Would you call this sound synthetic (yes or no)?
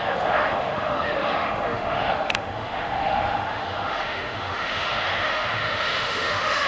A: yes